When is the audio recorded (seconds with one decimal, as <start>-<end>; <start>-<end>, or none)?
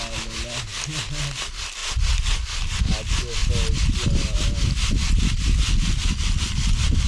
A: 0.0-7.1